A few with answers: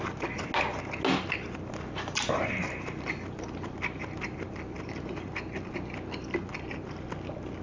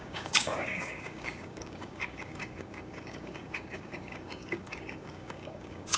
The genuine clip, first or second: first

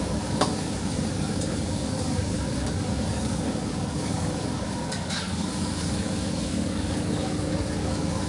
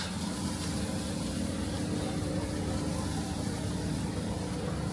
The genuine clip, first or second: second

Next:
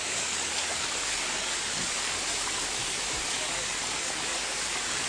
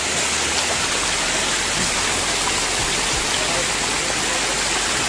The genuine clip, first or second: second